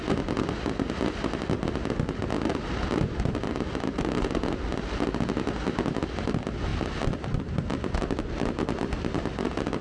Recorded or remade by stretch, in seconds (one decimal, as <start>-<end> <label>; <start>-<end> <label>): 0.0-9.8 recorded